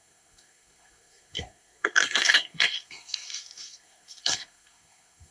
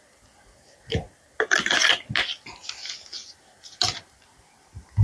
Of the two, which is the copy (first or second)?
first